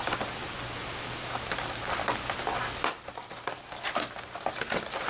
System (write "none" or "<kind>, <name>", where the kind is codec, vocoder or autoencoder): none